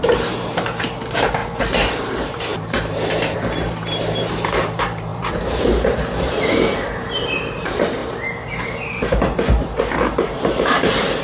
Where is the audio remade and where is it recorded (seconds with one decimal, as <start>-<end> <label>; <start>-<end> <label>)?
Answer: 0.0-11.2 remade